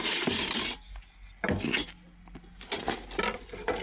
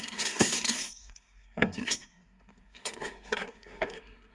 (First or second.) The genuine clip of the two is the first